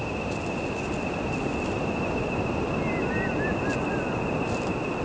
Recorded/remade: recorded